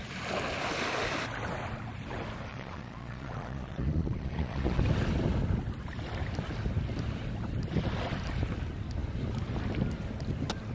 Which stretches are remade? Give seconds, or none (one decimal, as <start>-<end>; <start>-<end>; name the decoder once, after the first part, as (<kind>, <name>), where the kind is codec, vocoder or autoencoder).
2.5-4.8 (vocoder, Vocos)